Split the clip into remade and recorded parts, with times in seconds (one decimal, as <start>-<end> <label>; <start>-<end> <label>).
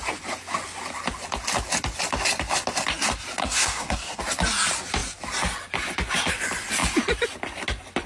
0.0-3.4 recorded; 3.4-4.2 remade; 4.2-8.1 recorded